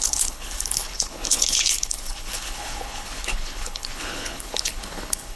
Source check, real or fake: fake